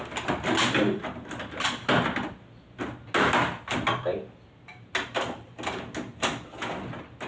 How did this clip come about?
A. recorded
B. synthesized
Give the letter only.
A